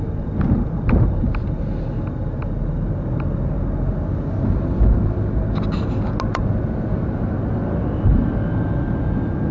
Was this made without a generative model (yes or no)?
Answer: yes